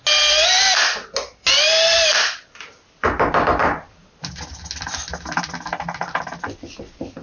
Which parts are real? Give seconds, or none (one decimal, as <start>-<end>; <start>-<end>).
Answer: 0.0-7.2